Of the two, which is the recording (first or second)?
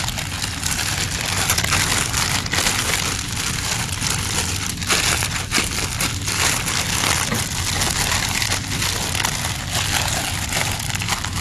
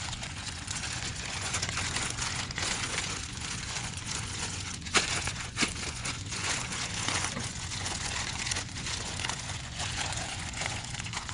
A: first